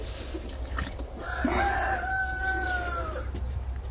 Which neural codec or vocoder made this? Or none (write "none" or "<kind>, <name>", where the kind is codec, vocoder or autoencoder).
none